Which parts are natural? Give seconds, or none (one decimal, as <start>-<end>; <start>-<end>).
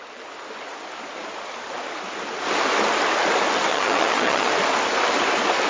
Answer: 0.0-3.7; 4.5-5.7